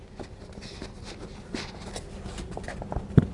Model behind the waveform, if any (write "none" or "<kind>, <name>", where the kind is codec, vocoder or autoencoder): vocoder, BigVGAN v2